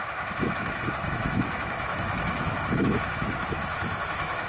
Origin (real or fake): fake